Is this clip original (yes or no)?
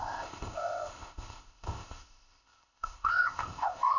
no